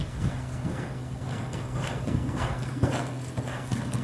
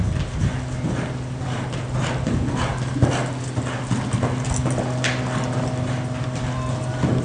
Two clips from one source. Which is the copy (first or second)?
first